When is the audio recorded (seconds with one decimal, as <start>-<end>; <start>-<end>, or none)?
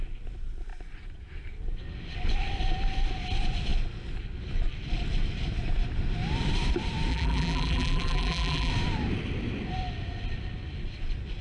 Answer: 0.0-7.1; 8.7-11.4